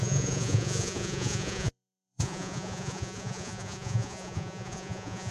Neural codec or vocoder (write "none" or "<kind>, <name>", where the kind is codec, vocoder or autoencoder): vocoder, Vocos